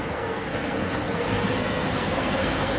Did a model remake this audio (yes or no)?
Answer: yes